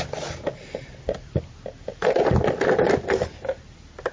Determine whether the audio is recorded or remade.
recorded